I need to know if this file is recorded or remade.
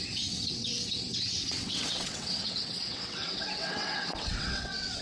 remade